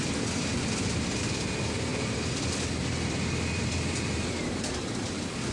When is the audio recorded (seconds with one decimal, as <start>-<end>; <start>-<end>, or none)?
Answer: none